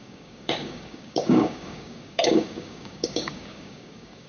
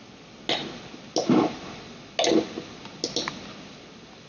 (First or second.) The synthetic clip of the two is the first